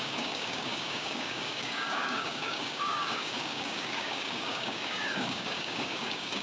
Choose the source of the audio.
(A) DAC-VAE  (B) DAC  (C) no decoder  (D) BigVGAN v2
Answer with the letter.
B